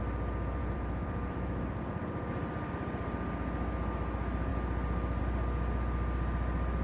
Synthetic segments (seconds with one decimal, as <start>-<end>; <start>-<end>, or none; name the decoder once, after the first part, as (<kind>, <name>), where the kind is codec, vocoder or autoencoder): 0.6-2.7 (vocoder, BigVGAN v2)